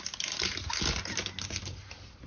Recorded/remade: recorded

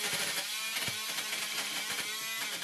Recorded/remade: recorded